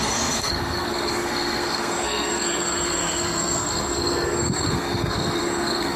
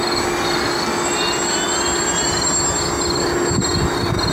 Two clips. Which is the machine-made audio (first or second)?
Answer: first